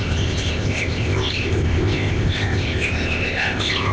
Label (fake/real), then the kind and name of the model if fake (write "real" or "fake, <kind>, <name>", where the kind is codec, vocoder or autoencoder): fake, codec, ZipCodec